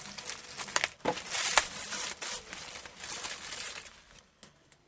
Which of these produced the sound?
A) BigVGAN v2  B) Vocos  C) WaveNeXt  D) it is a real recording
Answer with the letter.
D